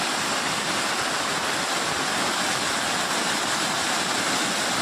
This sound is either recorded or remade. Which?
recorded